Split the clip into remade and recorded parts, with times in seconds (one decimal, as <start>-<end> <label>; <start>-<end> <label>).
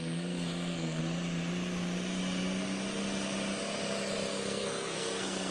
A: 0.0-1.0 remade; 1.0-4.3 recorded; 4.3-5.5 remade